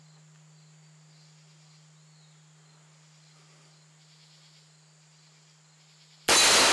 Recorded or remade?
recorded